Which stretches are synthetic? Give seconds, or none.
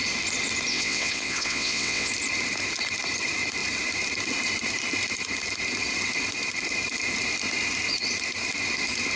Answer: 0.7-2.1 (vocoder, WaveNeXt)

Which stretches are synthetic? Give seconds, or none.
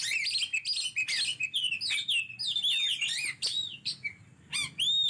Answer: none